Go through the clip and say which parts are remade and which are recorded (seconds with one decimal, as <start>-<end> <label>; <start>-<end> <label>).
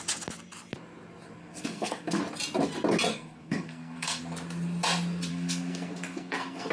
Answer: 0.0-1.4 recorded; 1.4-2.2 remade; 2.2-3.1 recorded; 3.1-4.2 remade; 4.2-5.3 recorded; 5.3-6.7 remade